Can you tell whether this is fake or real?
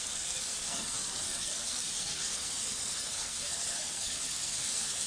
fake